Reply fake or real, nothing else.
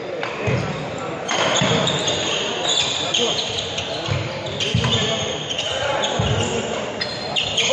real